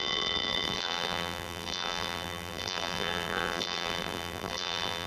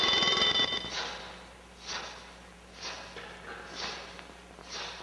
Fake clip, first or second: first